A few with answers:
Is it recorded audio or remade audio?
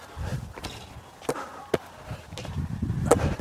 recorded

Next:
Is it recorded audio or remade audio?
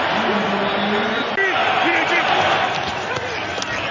recorded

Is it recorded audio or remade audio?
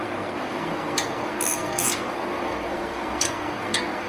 remade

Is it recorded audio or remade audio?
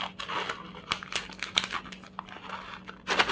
recorded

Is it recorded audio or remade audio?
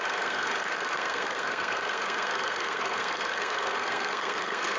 remade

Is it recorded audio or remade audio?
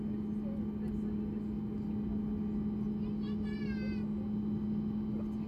recorded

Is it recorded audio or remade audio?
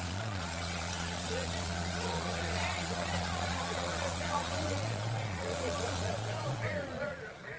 remade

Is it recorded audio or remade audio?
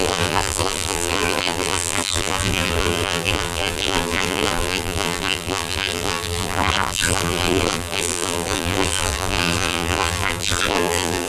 remade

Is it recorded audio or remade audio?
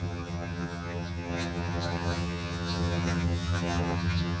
remade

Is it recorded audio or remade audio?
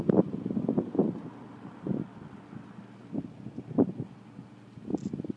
recorded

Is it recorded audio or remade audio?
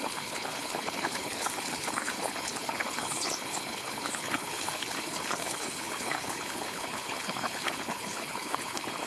remade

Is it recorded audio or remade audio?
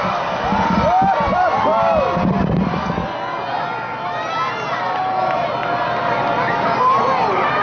recorded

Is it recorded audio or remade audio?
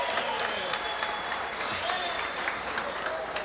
remade